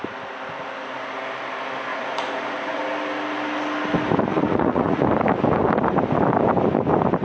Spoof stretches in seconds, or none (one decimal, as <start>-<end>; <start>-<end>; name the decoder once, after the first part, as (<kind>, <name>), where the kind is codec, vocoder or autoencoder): 1.9-2.8 (vocoder, Vocos); 4.3-5.0